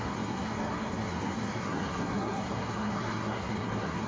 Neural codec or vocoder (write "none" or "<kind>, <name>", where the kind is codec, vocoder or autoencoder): codec, SNAC